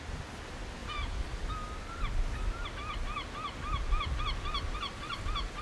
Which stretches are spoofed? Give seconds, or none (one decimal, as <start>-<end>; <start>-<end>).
none